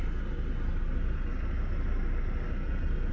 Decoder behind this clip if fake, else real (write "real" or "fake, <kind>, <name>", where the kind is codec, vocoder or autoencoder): real